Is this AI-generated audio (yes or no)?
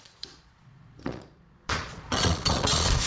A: yes